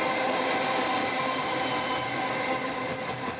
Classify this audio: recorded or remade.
recorded